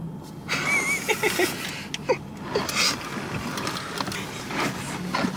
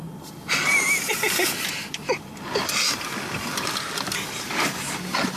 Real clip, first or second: first